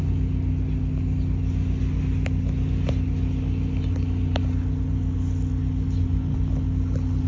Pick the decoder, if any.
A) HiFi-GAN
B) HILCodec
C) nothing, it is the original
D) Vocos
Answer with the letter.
C